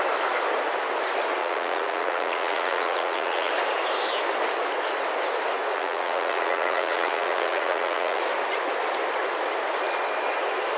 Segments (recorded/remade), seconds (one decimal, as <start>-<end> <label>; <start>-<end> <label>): 0.0-1.4 recorded; 1.4-3.5 remade; 3.5-5.7 recorded; 5.7-8.2 remade; 8.2-10.8 recorded